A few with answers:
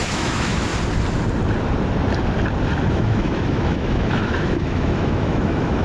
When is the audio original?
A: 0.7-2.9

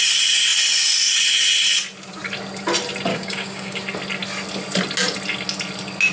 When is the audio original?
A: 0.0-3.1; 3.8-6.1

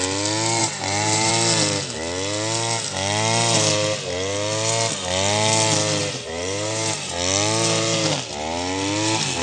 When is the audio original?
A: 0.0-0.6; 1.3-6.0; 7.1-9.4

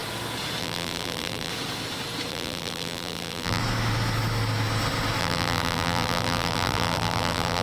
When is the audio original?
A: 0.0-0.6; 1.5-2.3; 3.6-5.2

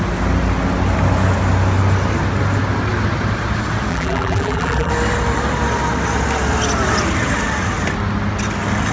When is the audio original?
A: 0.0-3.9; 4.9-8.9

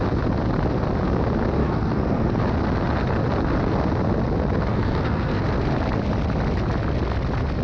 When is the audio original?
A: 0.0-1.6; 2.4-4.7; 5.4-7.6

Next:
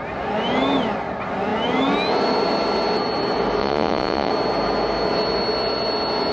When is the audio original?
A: 0.0-3.6; 4.3-6.3

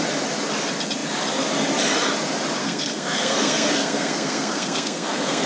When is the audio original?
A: 0.0-2.6